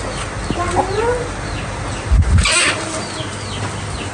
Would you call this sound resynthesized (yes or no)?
no